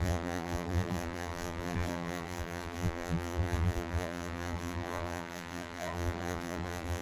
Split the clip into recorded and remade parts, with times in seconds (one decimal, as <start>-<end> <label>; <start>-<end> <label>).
0.0-7.0 remade